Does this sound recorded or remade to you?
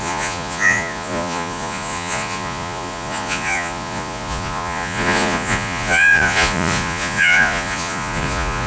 remade